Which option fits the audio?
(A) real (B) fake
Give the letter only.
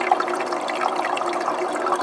A